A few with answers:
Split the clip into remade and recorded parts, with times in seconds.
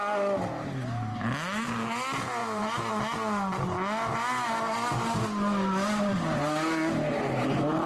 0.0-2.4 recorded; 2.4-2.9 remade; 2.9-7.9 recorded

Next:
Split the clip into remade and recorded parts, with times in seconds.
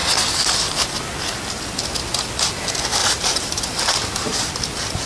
0.0-3.0 recorded; 3.0-4.5 remade; 4.5-5.1 recorded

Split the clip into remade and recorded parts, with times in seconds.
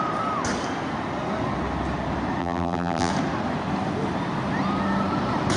0.0-2.4 recorded; 2.4-3.1 remade; 3.1-5.6 recorded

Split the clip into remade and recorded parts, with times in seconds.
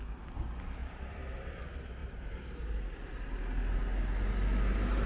0.0-0.8 recorded; 0.8-1.6 remade; 1.6-2.0 recorded; 2.0-2.6 remade; 2.6-5.1 recorded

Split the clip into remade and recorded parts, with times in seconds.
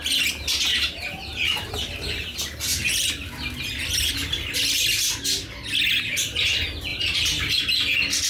0.0-0.7 recorded; 0.7-1.7 remade; 1.7-6.9 recorded; 6.9-7.6 remade; 7.6-8.3 recorded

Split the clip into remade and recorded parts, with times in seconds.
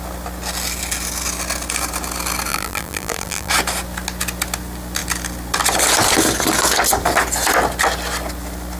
0.0-2.5 recorded; 2.5-3.5 remade; 3.5-8.8 recorded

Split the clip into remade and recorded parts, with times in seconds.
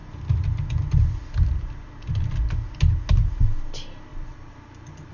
0.0-2.1 remade; 2.1-4.1 recorded; 4.1-5.1 remade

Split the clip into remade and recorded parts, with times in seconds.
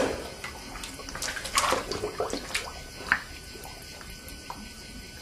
0.0-1.0 remade; 1.0-3.4 recorded; 3.4-3.8 remade; 3.8-4.3 recorded; 4.3-5.2 remade